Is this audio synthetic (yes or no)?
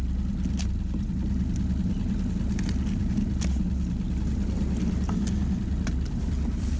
no